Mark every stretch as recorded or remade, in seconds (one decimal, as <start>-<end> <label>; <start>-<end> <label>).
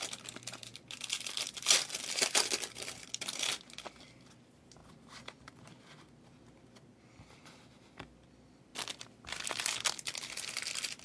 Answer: 0.0-11.0 recorded